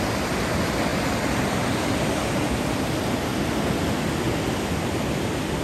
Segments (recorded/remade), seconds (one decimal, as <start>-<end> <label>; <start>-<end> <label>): 0.0-5.6 recorded